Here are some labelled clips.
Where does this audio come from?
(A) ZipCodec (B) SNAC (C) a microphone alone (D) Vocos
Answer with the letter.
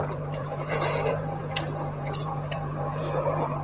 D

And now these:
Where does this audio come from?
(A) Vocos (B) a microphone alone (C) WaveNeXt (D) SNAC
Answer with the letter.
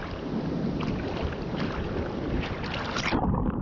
B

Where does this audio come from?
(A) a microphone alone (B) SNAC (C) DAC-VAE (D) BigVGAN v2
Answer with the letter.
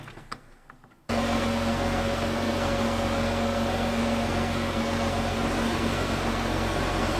B